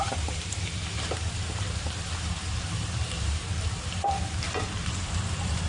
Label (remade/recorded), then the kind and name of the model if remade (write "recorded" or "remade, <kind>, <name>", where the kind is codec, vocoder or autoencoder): remade, vocoder, BigVGAN v2